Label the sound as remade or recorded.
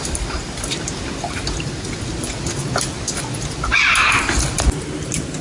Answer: recorded